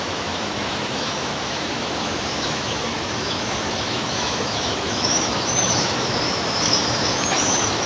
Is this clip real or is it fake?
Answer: fake